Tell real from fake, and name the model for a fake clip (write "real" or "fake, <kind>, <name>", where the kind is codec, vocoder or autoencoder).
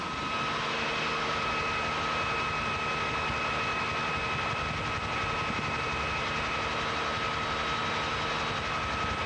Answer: real